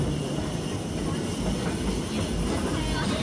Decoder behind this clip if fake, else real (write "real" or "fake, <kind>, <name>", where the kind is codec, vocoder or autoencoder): real